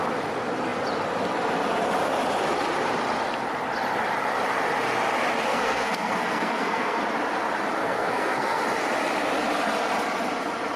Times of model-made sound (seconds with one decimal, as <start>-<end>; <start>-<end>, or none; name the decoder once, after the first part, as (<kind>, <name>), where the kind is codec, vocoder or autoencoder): 5.5-7.0 (codec, SNAC); 7.8-8.6